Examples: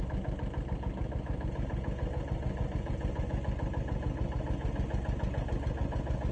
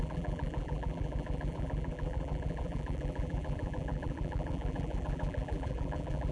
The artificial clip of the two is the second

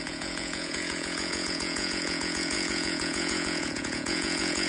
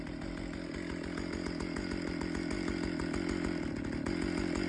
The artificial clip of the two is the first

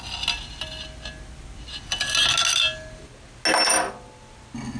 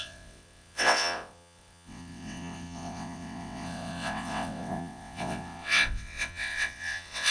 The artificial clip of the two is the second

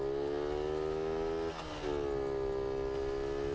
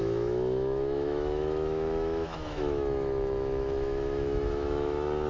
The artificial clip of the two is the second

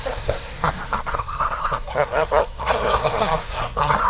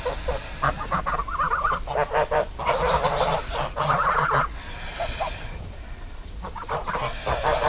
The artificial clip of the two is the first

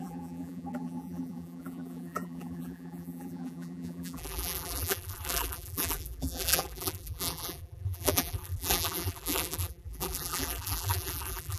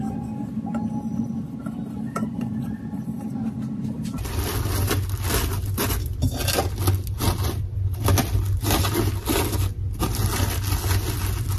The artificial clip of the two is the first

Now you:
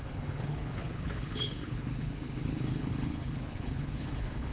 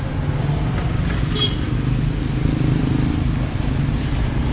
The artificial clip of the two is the first